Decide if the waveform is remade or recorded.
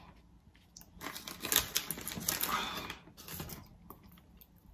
recorded